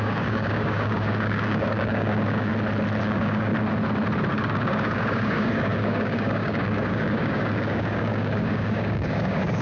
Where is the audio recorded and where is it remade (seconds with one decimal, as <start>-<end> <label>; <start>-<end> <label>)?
0.0-2.5 remade; 2.5-3.0 recorded; 3.0-3.5 remade; 3.5-4.3 recorded; 4.3-9.6 remade